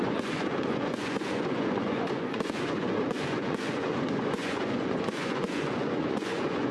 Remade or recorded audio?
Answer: remade